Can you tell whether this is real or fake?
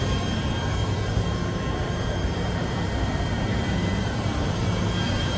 fake